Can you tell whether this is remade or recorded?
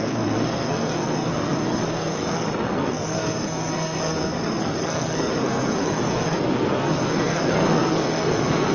remade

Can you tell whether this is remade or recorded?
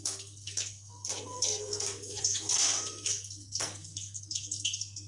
remade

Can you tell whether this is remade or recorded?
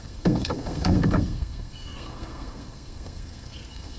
remade